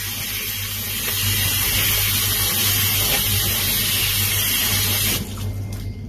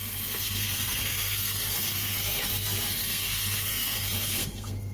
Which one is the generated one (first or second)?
second